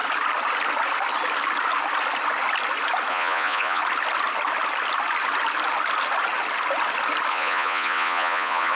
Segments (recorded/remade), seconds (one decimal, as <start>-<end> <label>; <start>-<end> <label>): 0.0-3.1 recorded; 3.1-3.8 remade; 3.8-7.3 recorded; 7.3-8.8 remade